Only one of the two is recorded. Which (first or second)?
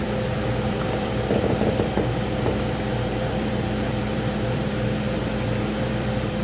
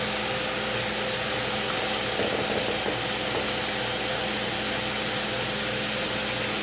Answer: second